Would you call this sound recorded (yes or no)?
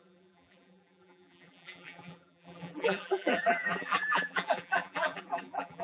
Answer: no